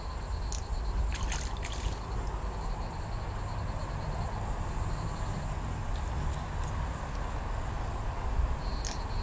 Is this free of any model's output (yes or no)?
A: yes